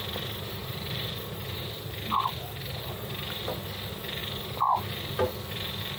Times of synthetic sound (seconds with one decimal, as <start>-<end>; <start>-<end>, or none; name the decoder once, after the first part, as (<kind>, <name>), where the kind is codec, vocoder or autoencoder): 0.6-3.5 (vocoder, BigVGAN v2); 4.2-4.8